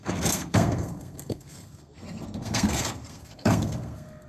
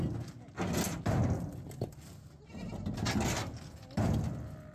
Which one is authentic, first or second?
second